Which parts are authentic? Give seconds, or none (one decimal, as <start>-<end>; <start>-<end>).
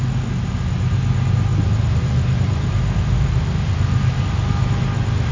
0.0-1.5; 4.7-5.3